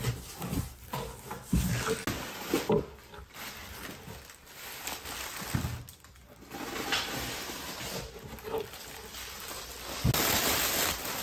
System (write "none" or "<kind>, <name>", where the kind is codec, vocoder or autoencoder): none